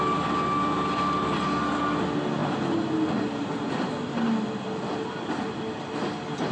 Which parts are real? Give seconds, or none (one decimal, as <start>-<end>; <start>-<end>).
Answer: 0.0-6.5